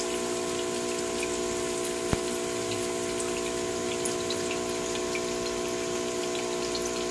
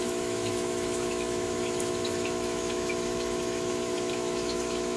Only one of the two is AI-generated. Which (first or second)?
second